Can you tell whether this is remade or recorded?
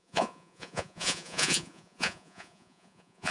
remade